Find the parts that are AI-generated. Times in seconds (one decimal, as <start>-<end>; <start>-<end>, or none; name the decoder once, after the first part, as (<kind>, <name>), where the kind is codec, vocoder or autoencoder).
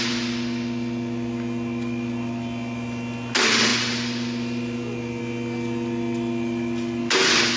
none